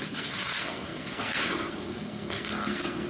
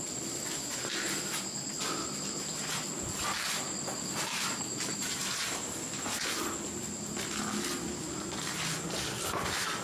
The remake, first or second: first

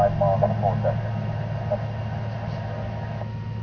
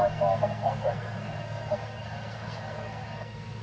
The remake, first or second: second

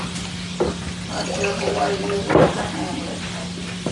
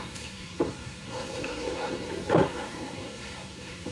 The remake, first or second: second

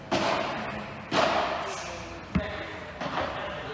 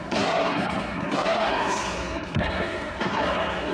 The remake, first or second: second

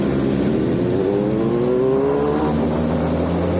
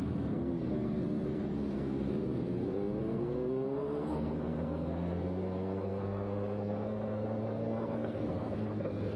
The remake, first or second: second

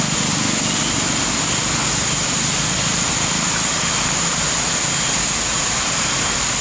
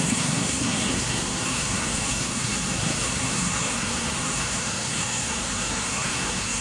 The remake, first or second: second